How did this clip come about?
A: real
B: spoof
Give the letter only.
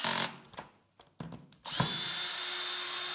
A